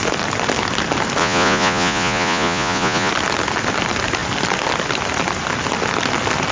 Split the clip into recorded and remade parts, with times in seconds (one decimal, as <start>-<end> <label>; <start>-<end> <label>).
0.0-1.2 recorded; 1.2-3.1 remade; 3.1-6.5 recorded